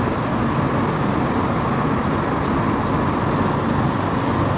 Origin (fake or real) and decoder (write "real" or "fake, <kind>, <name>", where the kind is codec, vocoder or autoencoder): real